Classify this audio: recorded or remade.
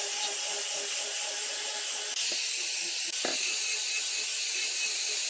recorded